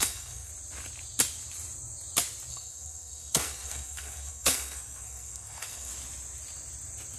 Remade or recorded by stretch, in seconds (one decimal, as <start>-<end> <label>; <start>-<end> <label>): 0.0-0.5 remade; 0.5-2.5 recorded; 2.5-5.9 remade; 5.9-7.2 recorded